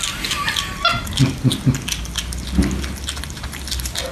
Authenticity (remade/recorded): recorded